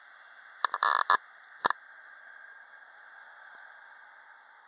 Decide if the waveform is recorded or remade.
recorded